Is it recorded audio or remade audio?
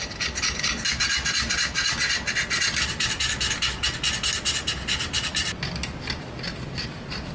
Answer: recorded